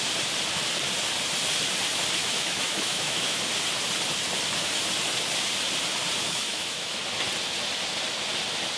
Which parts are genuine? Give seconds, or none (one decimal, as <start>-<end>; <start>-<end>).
0.0-2.2; 3.4-6.2; 7.0-8.8